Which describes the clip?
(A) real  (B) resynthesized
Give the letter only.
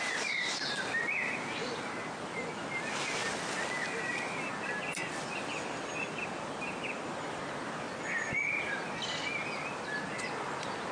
A